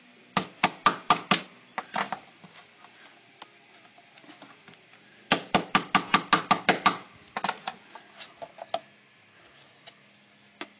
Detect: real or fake real